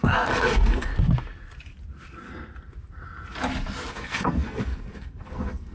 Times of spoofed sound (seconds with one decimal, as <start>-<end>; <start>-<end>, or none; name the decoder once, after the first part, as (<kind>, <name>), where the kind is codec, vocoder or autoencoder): 0.0-0.9 (codec, SNAC); 3.9-5.7